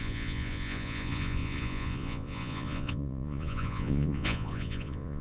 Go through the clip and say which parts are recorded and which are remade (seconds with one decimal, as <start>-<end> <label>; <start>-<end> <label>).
0.0-5.2 remade